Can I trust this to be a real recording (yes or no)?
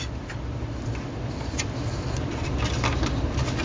no